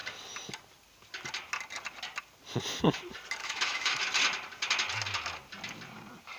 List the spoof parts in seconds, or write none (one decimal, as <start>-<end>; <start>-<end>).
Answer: 3.4-4.0